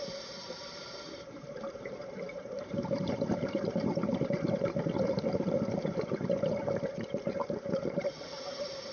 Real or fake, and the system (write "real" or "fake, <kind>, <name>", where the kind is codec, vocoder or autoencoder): fake, vocoder, BigVGAN v2